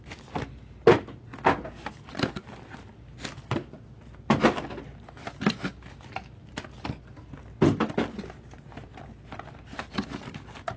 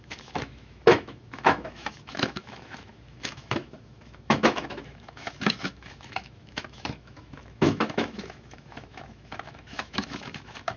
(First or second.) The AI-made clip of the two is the second